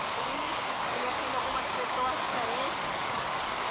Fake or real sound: fake